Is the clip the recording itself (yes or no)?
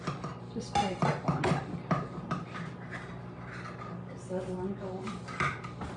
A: yes